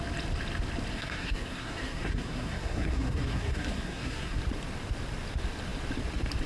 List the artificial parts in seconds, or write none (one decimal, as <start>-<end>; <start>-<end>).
0.9-4.4